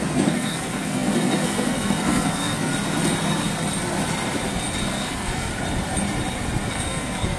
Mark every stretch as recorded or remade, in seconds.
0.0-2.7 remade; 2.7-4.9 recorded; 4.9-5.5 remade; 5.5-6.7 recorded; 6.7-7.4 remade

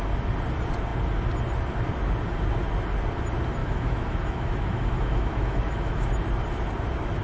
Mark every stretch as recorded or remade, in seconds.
0.0-3.6 recorded; 3.6-6.1 remade; 6.1-7.2 recorded

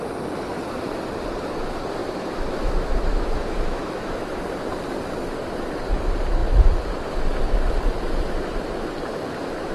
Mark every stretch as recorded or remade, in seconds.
0.0-2.0 recorded; 2.0-4.4 remade; 4.4-9.7 recorded